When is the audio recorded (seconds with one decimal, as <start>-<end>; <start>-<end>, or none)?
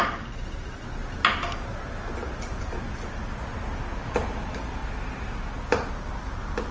0.0-6.7